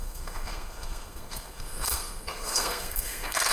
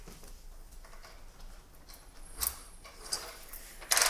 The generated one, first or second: first